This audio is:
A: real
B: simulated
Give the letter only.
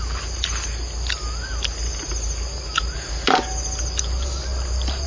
A